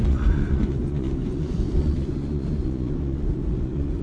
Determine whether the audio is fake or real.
fake